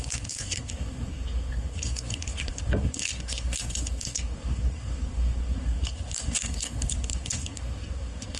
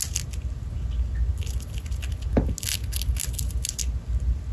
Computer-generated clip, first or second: first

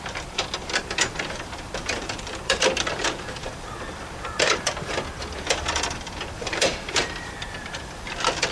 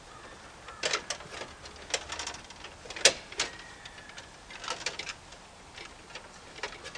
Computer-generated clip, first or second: first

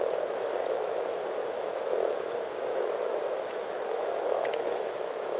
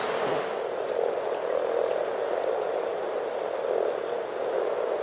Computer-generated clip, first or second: first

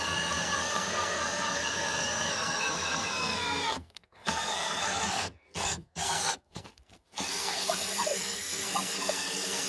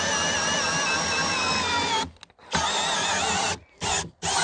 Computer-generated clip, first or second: first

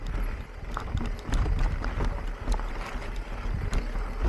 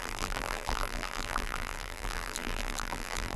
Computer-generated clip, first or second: second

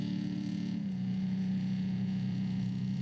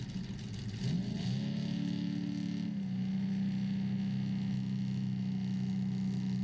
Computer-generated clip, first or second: first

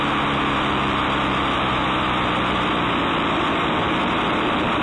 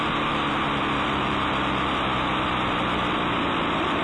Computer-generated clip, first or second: second